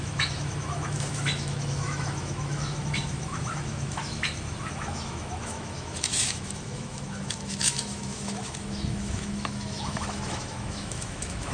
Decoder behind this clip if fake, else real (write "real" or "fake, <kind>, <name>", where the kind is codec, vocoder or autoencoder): fake, autoencoder, DAC-VAE